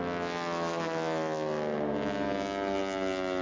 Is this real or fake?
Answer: real